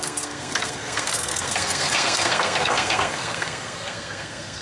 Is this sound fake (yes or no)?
yes